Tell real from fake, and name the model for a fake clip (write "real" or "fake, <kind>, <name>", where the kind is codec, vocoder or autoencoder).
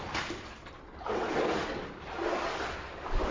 real